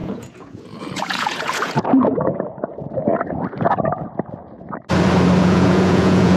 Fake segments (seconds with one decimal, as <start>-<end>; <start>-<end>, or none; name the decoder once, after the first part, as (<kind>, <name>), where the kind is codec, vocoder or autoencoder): 0.0-3.1 (vocoder, Vocos); 5.4-6.4

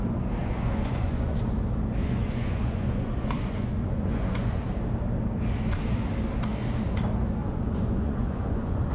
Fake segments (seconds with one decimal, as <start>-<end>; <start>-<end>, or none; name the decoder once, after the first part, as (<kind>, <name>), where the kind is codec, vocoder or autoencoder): 0.4-1.4 (vocoder, Vocos); 2.0-4.6; 7.4-8.9

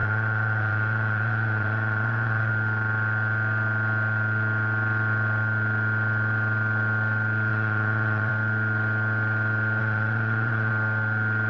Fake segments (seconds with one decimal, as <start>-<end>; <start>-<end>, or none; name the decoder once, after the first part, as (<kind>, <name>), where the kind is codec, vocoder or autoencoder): 0.0-2.5 (vocoder, Vocos); 7.5-8.3; 9.8-10.7

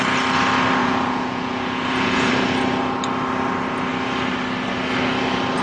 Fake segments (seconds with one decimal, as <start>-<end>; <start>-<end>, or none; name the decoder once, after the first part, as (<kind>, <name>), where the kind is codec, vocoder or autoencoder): 0.8-2.3 (vocoder, Vocos)